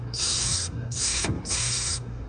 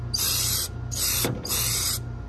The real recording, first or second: second